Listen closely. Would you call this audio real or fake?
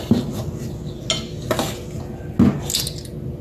real